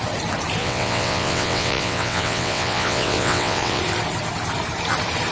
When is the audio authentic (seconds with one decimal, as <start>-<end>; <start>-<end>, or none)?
0.0-0.6; 3.8-5.3